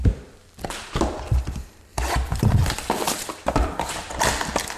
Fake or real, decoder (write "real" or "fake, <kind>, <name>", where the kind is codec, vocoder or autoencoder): fake, vocoder, BigVGAN v2